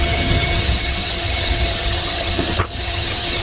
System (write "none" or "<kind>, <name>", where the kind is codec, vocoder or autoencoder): vocoder, HiFi-GAN